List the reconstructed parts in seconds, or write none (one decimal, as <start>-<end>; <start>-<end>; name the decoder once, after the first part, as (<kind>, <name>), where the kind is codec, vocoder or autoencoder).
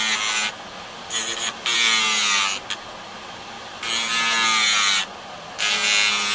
none